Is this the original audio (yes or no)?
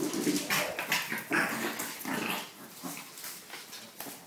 yes